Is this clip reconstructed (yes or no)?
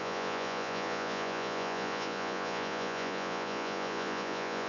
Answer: yes